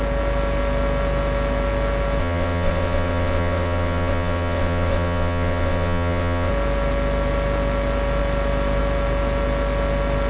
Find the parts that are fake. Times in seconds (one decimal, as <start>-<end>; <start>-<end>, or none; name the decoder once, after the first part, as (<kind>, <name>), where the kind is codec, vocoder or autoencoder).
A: 2.2-6.5 (vocoder, WaveNeXt)